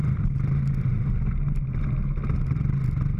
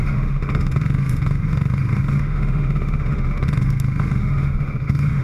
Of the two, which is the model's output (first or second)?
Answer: second